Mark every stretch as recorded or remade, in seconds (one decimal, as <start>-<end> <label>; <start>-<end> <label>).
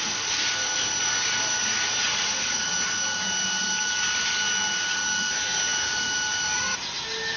0.0-1.6 recorded; 1.6-2.7 remade; 2.7-7.4 recorded